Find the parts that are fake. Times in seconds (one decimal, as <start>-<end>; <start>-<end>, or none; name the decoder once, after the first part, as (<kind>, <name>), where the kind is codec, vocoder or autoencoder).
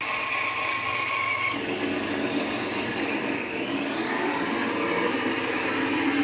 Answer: 0.7-4.3 (codec, DAC)